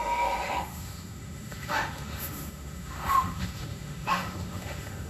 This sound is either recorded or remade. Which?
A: remade